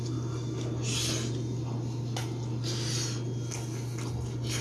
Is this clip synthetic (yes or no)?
no